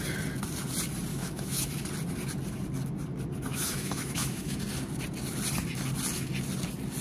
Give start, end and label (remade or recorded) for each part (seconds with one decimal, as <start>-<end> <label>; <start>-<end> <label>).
0.0-1.1 recorded; 1.1-1.7 remade; 1.7-3.5 recorded; 3.5-4.6 remade; 4.6-7.0 recorded